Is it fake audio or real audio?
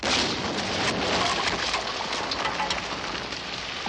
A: real